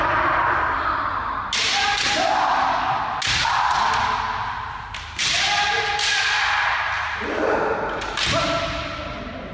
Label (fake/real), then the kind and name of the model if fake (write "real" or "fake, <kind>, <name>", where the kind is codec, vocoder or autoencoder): real